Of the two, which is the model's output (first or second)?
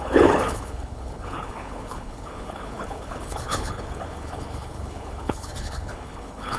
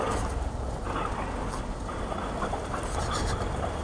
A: first